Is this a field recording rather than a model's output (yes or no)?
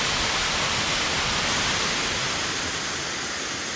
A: yes